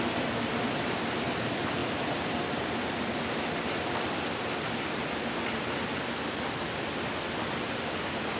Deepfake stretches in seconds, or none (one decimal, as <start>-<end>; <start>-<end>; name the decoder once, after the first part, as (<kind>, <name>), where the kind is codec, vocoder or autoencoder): none